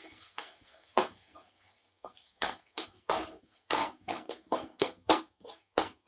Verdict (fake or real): fake